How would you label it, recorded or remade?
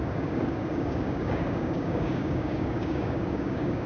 remade